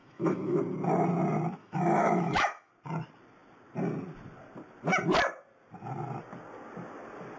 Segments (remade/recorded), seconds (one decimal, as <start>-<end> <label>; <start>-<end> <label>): 0.0-0.6 remade; 0.6-1.6 recorded; 1.6-2.7 remade; 2.7-7.4 recorded